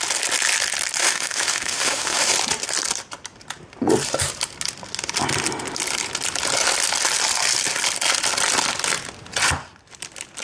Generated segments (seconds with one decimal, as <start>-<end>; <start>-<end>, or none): 1.0-2.3